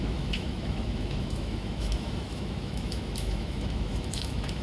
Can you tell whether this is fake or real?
fake